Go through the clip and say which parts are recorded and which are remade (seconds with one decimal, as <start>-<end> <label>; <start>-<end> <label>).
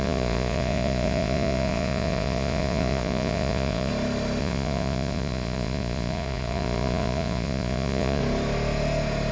0.0-3.9 remade; 3.9-4.4 recorded; 4.4-8.2 remade; 8.2-9.3 recorded